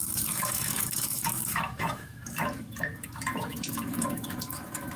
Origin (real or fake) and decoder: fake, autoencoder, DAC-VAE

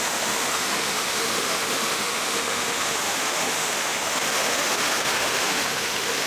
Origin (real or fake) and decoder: fake, autoencoder, DAC-VAE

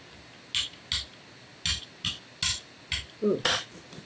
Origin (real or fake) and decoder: real